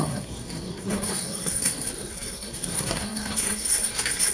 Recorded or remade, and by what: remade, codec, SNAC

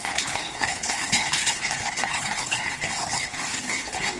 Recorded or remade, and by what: remade, codec, HILCodec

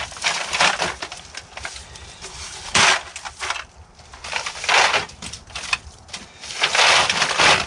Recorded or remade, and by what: recorded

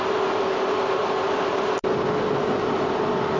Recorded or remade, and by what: recorded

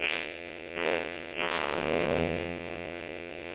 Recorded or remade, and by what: remade, vocoder, WaveNeXt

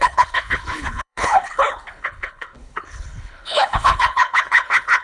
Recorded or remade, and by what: remade, codec, HILCodec